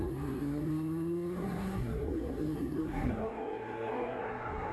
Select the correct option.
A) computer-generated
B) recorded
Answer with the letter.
A